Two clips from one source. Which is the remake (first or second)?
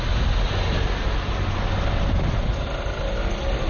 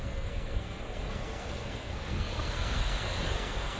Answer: second